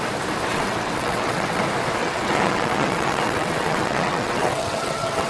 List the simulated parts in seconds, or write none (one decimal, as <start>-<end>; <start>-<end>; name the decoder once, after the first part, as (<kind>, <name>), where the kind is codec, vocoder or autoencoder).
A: 0.5-1.6 (vocoder, WaveNeXt); 2.0-5.3